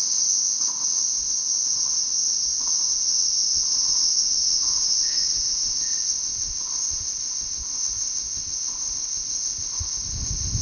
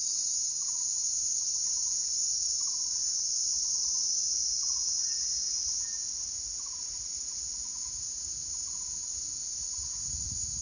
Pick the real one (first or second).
second